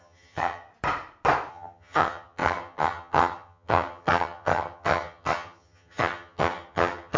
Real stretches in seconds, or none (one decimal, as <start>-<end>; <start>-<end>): 0.7-1.5

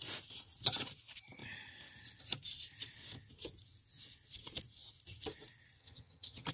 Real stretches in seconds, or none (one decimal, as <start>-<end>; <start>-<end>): 0.0-5.8

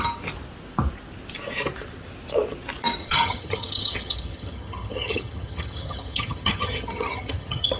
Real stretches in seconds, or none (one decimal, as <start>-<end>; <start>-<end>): 0.0-3.0

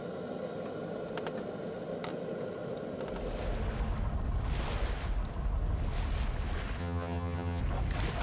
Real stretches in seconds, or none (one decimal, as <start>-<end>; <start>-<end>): 0.0-6.8; 7.6-8.2